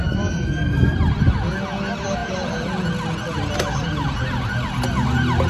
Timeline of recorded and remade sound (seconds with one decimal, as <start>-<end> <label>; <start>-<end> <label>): 0.0-5.5 recorded